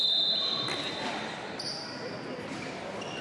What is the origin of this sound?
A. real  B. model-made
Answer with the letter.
A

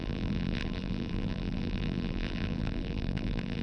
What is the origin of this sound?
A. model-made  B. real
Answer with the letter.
A